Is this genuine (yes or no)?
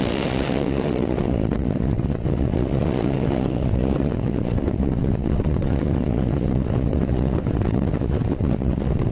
no